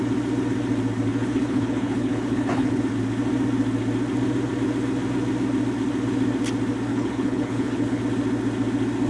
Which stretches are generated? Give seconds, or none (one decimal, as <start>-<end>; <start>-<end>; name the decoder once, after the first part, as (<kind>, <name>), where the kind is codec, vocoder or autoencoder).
1.1-2.8 (codec, HILCodec); 6.9-8.0